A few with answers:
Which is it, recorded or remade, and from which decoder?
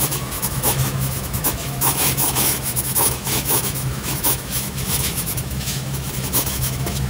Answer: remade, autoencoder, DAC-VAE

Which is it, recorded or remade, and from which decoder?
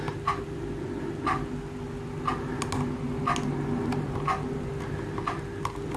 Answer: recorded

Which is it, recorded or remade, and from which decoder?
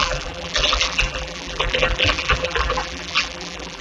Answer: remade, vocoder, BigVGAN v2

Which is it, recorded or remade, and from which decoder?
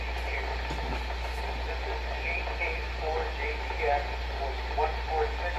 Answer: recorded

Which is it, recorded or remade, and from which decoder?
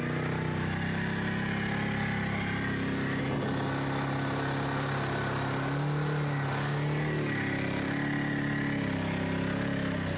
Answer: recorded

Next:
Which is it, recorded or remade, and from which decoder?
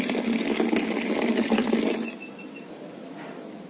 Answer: recorded